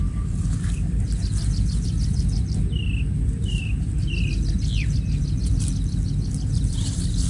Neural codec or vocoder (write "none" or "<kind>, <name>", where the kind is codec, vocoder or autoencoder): none